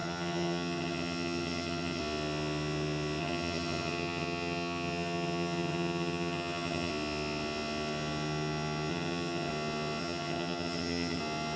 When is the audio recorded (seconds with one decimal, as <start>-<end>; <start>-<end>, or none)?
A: 2.0-3.2; 6.9-8.9; 9.5-10.0; 11.2-11.6